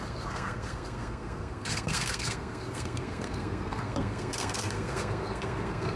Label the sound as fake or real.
fake